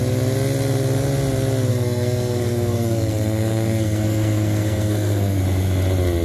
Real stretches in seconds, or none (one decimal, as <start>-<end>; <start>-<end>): 0.0-1.7; 5.4-6.2